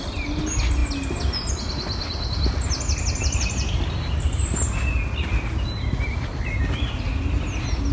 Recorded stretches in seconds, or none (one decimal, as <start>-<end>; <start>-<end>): 0.0-7.9